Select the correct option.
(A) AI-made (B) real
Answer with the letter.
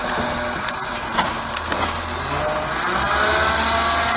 B